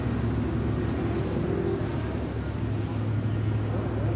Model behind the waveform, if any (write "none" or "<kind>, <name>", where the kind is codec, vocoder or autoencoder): none